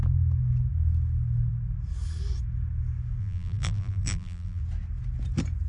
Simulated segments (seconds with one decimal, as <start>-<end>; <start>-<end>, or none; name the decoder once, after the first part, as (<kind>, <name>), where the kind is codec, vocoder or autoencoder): 3.2-4.6 (vocoder, BigVGAN v2)